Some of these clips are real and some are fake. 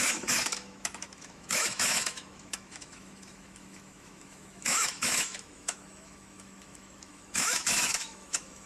fake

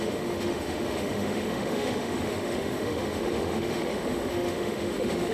fake